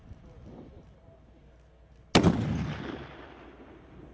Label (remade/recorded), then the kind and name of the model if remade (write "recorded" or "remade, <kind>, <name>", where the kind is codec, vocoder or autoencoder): recorded